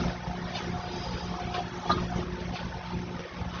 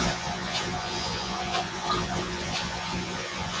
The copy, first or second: second